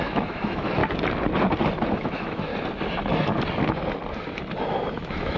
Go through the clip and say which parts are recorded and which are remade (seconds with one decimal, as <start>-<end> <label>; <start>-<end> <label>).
0.0-0.8 remade; 0.8-1.9 recorded; 1.9-2.5 remade; 2.5-4.9 recorded; 4.9-5.4 remade